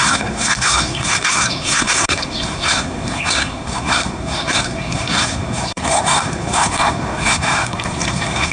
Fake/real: fake